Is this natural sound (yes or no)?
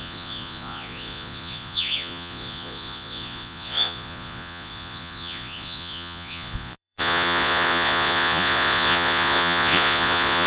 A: no